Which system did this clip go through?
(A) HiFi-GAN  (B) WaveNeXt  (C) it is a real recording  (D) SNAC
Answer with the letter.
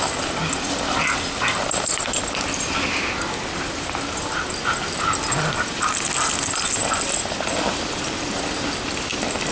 C